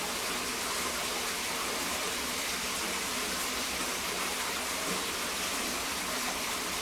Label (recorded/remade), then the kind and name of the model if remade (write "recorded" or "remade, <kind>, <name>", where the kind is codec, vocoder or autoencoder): recorded